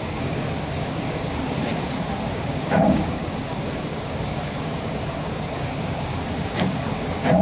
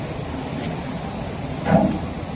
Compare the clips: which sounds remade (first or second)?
first